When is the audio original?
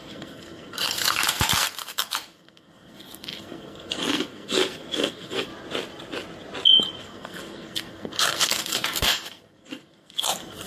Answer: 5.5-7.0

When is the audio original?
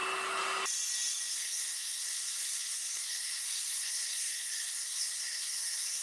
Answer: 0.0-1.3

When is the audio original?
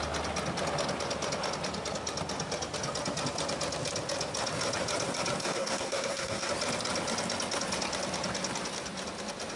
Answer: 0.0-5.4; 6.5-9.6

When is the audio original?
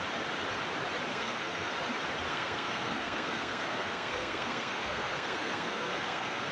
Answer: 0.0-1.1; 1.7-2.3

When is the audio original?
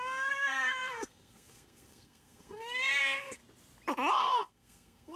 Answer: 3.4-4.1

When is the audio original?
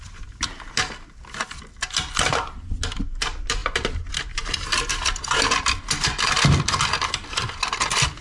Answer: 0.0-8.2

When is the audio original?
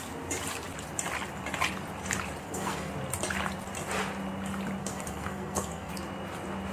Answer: 0.0-2.4; 2.9-4.8; 5.9-6.7